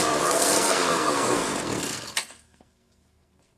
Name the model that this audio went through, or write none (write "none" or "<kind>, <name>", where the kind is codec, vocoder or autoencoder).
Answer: codec, SNAC